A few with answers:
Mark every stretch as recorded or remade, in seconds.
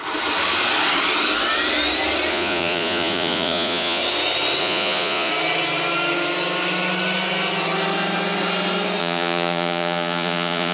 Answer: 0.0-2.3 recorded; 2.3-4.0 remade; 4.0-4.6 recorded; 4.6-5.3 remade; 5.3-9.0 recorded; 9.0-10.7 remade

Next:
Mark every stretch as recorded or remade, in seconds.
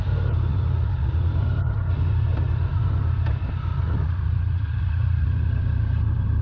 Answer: 0.0-0.5 recorded; 0.5-1.3 remade; 1.3-3.7 recorded; 3.7-5.5 remade; 5.5-6.4 recorded